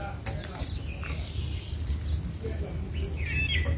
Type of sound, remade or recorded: recorded